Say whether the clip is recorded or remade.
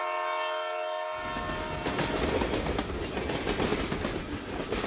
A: recorded